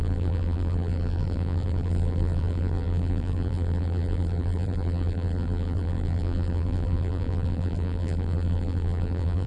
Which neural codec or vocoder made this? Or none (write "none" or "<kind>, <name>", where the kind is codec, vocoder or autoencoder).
vocoder, BigVGAN v2